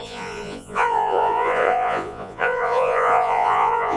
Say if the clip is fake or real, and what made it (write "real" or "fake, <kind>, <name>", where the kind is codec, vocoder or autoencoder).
fake, vocoder, Vocos